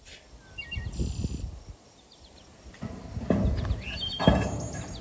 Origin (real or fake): real